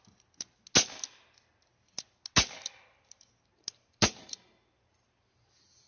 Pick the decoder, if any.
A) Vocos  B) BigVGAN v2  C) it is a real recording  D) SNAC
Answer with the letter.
C